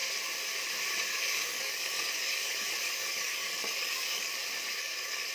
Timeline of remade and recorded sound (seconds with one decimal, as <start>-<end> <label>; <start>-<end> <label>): 0.0-1.1 recorded; 1.1-4.3 remade; 4.3-4.7 recorded; 4.7-5.3 remade